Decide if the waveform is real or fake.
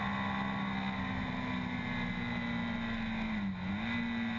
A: real